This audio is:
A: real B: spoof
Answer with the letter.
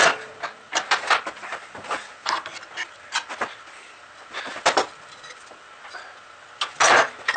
A